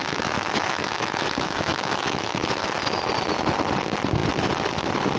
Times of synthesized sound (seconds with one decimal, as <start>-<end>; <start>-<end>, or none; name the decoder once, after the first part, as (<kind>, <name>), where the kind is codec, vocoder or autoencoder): 0.0-2.6 (autoencoder, DAC-VAE)